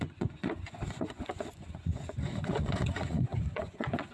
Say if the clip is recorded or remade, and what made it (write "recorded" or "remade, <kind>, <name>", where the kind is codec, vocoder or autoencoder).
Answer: remade, vocoder, Vocos